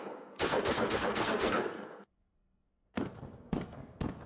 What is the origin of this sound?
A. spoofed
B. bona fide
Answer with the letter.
A